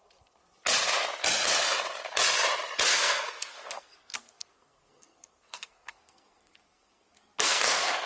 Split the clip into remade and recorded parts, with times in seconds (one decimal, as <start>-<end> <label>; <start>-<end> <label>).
0.0-2.9 recorded; 2.9-8.1 remade